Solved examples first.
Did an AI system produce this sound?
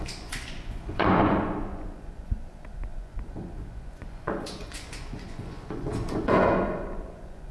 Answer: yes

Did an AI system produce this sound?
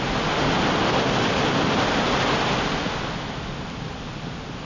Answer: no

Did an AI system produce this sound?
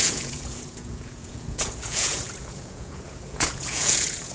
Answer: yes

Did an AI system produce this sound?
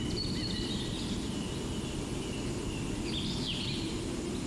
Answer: no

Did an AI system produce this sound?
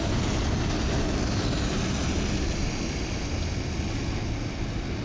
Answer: no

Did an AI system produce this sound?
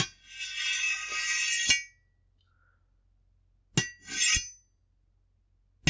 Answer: no